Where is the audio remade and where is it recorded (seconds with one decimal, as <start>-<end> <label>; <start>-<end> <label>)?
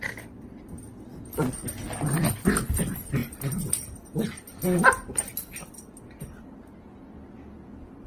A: 0.0-8.1 recorded